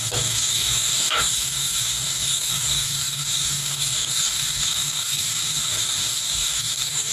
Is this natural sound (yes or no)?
no